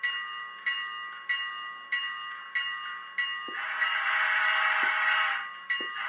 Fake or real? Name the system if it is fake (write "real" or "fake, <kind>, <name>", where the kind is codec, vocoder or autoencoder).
real